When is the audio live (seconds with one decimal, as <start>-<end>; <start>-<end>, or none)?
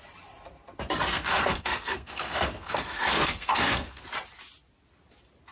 0.0-1.1; 4.0-5.5